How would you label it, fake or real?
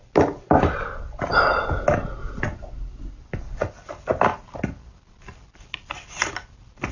real